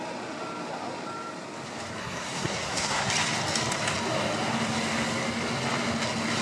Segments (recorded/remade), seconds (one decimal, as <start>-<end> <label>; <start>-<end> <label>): 0.0-2.0 recorded; 2.0-3.1 remade; 3.1-6.4 recorded